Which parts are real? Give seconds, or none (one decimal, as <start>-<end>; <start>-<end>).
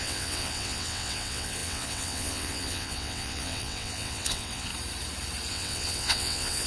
4.7-5.5